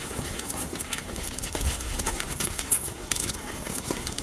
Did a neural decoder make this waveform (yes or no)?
yes